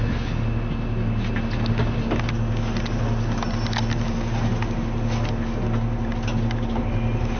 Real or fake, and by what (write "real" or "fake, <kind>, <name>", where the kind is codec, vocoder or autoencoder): real